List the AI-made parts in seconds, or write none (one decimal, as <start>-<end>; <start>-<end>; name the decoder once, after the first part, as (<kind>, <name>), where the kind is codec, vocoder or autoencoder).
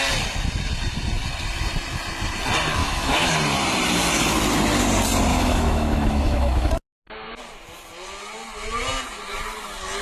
2.8-3.3 (autoencoder, DAC-VAE); 5.3-6.7